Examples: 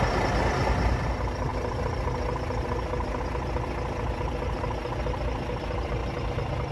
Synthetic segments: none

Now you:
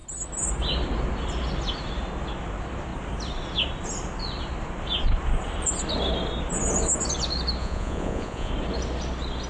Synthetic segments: 7.6-8.5 (vocoder, Vocos)

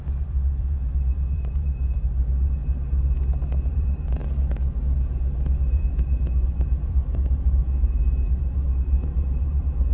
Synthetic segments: 0.0-2.6 (vocoder, BigVGAN v2); 3.7-4.2; 5.6-7.6; 8.4-9.9

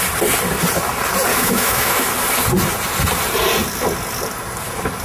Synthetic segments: 1.3-2.1 (autoencoder, DAC-VAE)

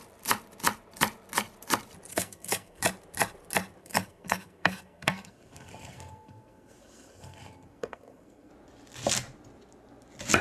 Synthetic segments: 2.1-2.8 (codec, SNAC); 3.8-8.5